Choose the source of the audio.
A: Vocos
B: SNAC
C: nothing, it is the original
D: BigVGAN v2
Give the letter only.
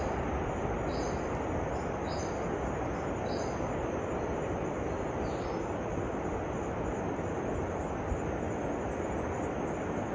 C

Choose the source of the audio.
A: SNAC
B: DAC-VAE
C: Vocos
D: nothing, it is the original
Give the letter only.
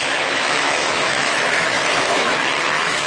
B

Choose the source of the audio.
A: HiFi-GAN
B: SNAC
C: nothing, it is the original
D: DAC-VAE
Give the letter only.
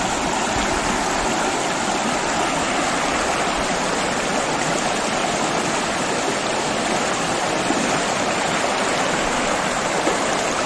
C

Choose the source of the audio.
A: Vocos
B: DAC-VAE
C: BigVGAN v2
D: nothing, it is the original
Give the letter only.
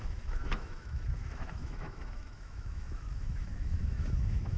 B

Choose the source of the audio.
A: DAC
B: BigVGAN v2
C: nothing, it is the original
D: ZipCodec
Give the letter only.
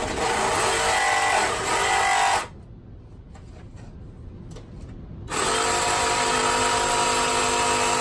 C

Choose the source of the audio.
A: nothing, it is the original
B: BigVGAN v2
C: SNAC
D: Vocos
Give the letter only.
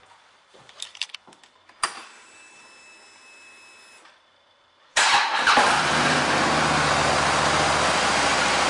A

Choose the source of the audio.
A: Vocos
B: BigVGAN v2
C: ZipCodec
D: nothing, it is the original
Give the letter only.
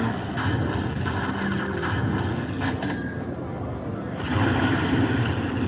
D